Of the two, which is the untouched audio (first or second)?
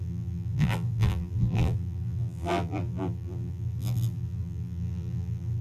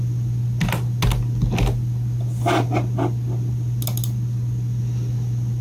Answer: second